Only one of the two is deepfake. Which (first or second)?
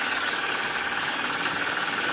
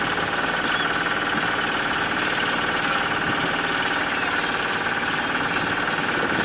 first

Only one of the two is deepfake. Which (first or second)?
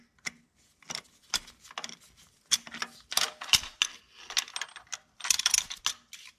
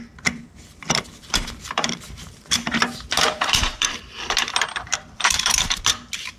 second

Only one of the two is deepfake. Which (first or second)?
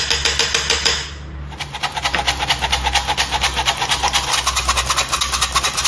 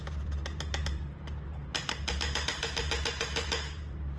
second